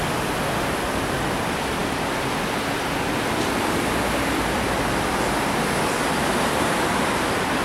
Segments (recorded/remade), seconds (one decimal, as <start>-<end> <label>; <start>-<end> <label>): 0.0-7.6 recorded